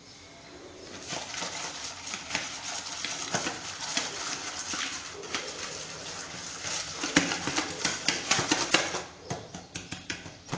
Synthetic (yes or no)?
no